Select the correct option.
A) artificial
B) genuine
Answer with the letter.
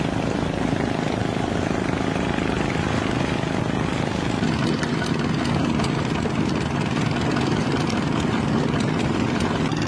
B